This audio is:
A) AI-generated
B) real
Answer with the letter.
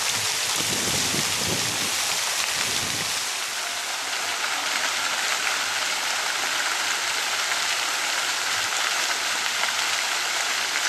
B